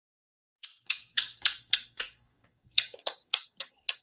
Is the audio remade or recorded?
remade